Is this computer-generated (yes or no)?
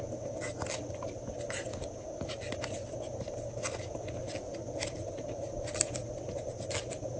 no